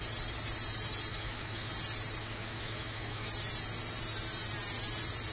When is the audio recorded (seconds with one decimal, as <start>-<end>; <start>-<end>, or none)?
0.0-1.1; 1.7-2.2; 3.3-5.3